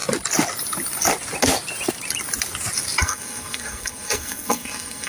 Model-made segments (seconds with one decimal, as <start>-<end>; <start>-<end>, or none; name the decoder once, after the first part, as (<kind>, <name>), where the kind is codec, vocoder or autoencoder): 3.0-5.1 (codec, SNAC)